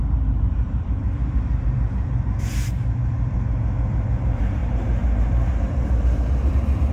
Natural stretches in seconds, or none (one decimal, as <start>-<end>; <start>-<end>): none